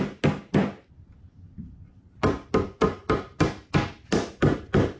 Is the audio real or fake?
real